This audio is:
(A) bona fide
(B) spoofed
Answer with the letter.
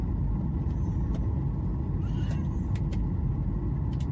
A